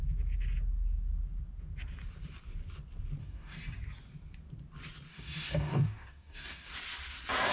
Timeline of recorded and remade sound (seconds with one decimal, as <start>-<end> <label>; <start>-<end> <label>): 0.0-3.2 recorded; 3.2-3.8 remade; 3.8-5.1 recorded; 5.1-6.7 remade; 6.7-7.5 recorded